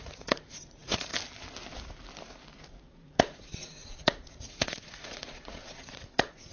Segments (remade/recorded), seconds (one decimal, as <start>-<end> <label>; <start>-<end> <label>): 0.0-1.1 remade; 1.1-2.9 recorded; 2.9-6.5 remade